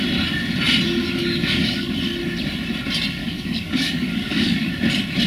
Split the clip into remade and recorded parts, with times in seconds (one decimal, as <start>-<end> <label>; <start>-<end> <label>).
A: 0.0-1.0 recorded; 1.0-1.9 remade; 1.9-3.2 recorded; 3.2-4.7 remade; 4.7-5.3 recorded